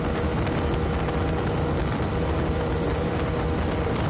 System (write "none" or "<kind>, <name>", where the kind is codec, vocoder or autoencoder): none